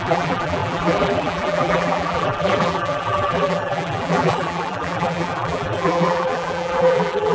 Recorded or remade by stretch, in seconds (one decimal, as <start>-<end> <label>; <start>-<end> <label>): 0.0-7.3 remade